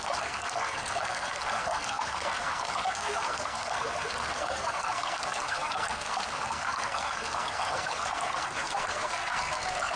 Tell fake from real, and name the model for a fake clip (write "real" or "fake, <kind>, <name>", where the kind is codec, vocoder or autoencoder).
fake, codec, SNAC